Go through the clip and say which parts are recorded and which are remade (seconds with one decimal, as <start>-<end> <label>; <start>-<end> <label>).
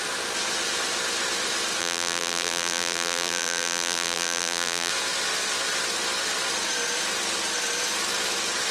0.0-1.8 recorded; 1.8-4.9 remade; 4.9-8.7 recorded